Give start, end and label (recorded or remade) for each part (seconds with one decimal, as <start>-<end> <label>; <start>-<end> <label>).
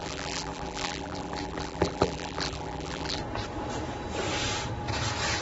0.0-3.2 remade; 3.2-5.4 recorded